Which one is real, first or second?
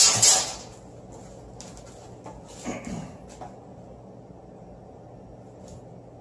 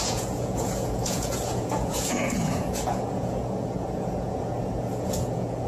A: first